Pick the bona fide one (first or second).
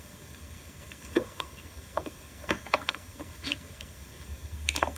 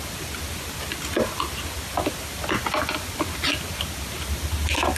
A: second